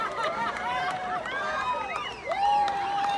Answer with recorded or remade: remade